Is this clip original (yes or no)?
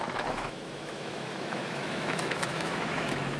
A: no